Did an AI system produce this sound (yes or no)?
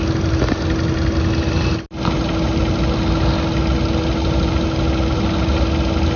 no